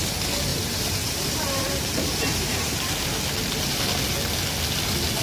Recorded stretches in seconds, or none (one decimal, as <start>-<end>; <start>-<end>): 0.0-0.5; 3.2-5.2